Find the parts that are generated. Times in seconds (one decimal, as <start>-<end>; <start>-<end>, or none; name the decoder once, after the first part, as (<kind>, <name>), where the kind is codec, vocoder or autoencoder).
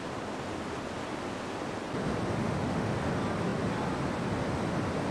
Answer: 2.4-2.9 (autoencoder, DAC-VAE)